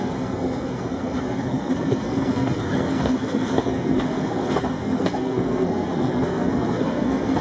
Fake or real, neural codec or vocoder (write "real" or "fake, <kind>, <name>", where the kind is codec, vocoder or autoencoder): fake, codec, SNAC